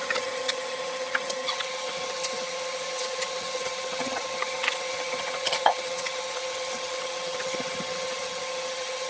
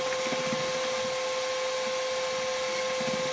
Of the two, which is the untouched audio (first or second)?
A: second